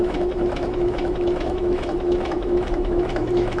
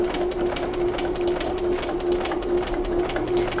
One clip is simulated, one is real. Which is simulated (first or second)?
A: first